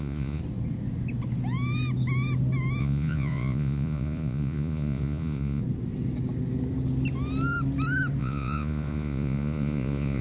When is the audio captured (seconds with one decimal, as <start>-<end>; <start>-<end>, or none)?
0.4-2.8; 5.6-8.2